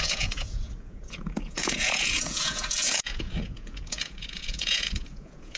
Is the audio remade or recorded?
remade